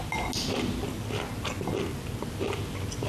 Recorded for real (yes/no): yes